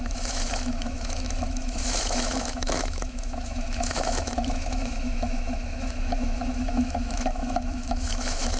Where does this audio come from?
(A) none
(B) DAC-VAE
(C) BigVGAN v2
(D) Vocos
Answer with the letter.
B